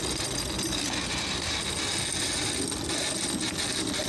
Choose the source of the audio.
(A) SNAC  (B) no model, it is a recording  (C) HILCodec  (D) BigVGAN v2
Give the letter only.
B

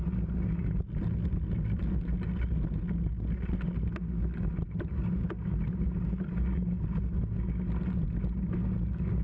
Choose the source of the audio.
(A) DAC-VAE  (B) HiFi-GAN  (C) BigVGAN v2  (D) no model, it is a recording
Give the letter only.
D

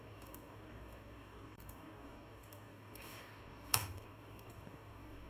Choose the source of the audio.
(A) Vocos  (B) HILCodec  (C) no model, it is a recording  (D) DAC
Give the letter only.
D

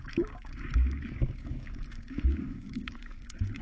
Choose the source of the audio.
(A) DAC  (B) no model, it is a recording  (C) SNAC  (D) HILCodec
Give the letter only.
A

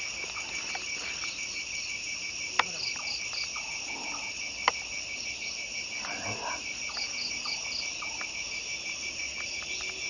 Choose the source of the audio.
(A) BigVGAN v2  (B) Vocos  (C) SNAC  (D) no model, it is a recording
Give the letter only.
D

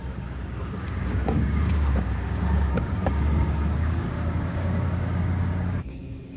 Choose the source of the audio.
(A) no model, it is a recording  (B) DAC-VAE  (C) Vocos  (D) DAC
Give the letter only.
D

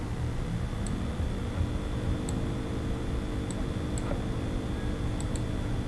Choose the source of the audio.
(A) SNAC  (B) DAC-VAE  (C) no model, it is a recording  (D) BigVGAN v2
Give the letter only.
C